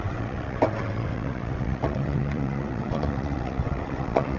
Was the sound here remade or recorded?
remade